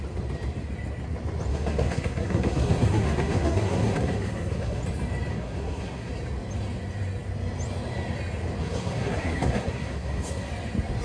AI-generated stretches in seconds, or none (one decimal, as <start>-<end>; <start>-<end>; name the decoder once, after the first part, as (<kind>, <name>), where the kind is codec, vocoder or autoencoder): 1.5-4.8 (codec, SNAC); 5.3-6.1; 8.6-10.5